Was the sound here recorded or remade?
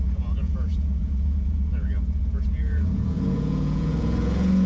remade